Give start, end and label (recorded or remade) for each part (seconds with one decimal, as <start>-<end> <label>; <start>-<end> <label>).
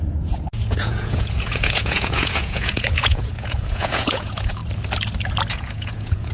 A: 0.0-4.6 remade; 4.6-5.5 recorded; 5.5-6.3 remade